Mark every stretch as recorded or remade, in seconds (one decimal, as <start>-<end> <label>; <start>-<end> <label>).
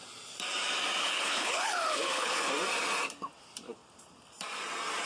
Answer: 0.0-1.0 recorded; 1.0-2.5 remade; 2.5-5.1 recorded